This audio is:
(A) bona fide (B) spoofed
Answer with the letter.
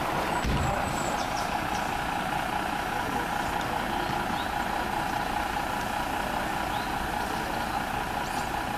A